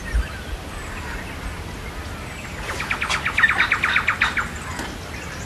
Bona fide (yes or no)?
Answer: yes